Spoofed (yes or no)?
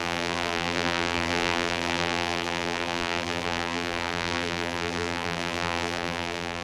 yes